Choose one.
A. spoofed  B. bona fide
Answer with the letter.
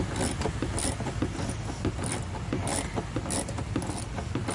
B